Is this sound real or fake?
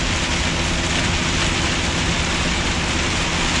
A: real